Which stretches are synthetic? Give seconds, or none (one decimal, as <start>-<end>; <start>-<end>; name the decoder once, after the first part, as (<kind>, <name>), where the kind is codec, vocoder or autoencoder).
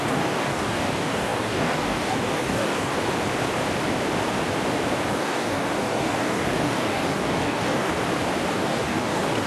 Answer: 0.0-2.9 (codec, DAC); 5.1-7.9; 8.5-9.5